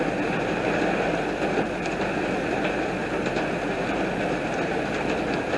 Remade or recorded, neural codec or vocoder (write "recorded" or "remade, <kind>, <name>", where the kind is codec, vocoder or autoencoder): recorded